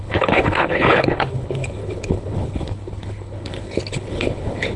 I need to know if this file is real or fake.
fake